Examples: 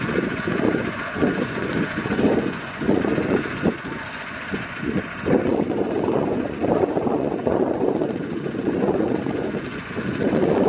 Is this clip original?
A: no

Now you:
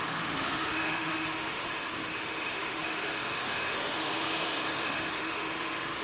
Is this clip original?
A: no